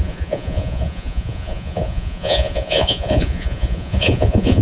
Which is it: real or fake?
fake